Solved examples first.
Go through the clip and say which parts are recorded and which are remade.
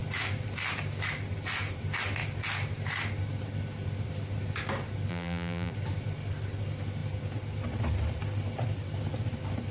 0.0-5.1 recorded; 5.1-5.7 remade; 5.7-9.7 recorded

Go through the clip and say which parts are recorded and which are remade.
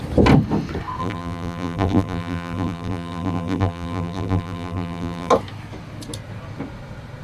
0.0-1.0 recorded; 1.0-5.3 remade; 5.3-7.2 recorded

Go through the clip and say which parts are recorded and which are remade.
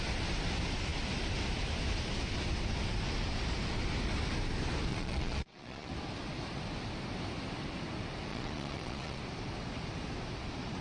0.0-4.9 recorded; 4.9-5.9 remade; 5.9-8.3 recorded; 8.3-9.2 remade; 9.2-10.8 recorded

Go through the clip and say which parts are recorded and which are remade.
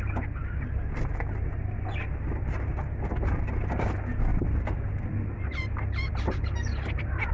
0.0-7.3 recorded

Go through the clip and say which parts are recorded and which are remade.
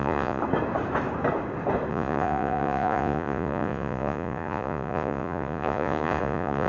0.0-0.4 remade; 0.4-1.9 recorded; 1.9-6.7 remade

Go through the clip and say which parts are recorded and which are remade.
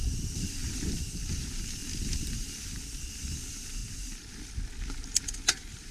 0.0-3.8 recorded; 3.8-4.3 remade; 4.3-5.9 recorded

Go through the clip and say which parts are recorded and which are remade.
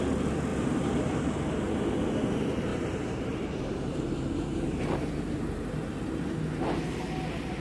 0.0-0.5 recorded; 0.5-1.2 remade; 1.2-2.7 recorded; 2.7-5.9 remade; 5.9-7.6 recorded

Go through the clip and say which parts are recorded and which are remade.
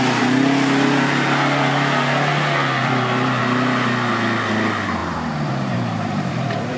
0.0-2.8 recorded; 2.8-3.4 remade; 3.4-5.0 recorded; 5.0-6.8 remade